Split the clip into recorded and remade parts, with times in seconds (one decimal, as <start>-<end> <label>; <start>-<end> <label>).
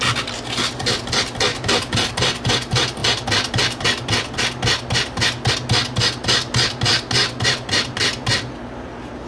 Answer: 0.0-1.5 recorded; 1.5-2.1 remade; 2.1-9.3 recorded